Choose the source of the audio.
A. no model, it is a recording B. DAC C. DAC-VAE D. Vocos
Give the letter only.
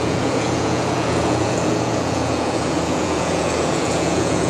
D